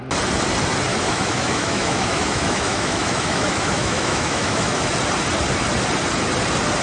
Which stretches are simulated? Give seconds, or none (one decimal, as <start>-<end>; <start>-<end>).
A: 0.9-4.9